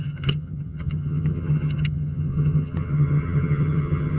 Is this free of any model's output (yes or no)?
no